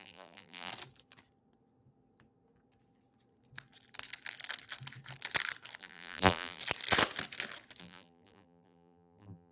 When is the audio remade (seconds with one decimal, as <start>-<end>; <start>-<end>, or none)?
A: 0.0-0.7; 5.8-6.6; 7.8-9.5